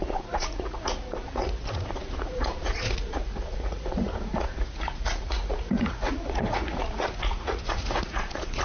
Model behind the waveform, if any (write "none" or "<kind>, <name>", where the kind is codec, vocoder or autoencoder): vocoder, Vocos